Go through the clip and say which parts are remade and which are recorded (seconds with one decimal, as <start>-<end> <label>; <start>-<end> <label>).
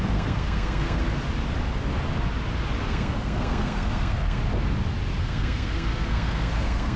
0.0-1.0 remade; 1.0-2.8 recorded; 2.8-4.4 remade; 4.4-5.2 recorded; 5.2-7.0 remade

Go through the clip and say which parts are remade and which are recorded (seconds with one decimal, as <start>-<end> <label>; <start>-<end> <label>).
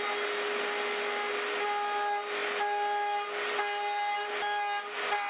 0.0-5.3 recorded